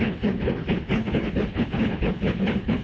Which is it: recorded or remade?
remade